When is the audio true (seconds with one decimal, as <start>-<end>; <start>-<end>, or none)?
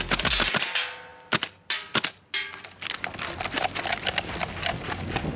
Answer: 0.0-5.4